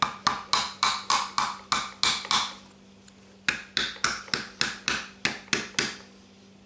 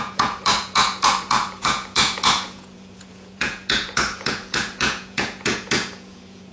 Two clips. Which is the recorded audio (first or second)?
first